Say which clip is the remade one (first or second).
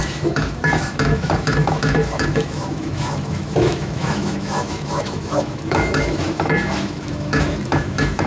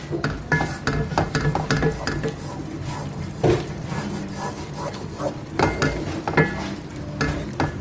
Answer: first